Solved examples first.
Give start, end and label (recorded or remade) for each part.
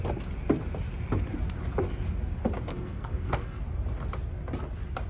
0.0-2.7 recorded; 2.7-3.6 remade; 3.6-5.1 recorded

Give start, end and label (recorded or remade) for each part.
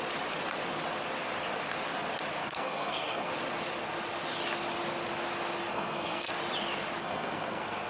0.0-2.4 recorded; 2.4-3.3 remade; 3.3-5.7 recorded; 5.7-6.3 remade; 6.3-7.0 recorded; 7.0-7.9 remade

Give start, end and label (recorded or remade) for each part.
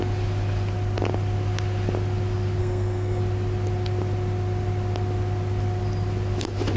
0.0-2.6 recorded; 2.6-3.2 remade; 3.2-6.8 recorded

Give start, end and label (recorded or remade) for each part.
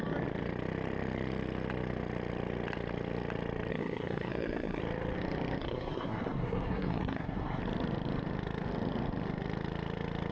0.0-3.7 recorded; 3.7-4.8 remade; 4.8-5.6 recorded; 5.6-7.6 remade; 7.6-10.3 recorded